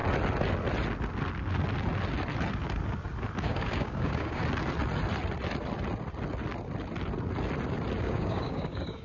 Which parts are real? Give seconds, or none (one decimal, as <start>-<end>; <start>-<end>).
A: 0.0-3.4; 4.4-8.0